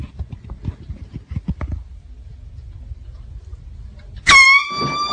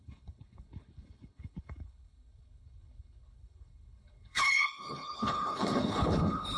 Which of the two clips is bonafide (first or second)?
first